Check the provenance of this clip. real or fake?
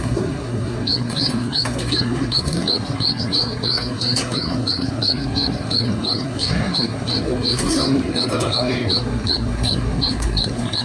fake